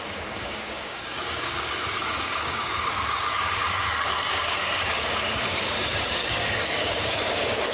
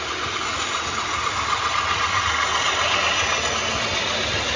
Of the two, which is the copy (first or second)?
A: first